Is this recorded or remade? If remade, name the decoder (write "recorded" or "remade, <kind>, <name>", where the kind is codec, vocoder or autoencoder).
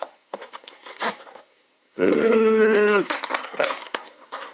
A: remade, codec, SNAC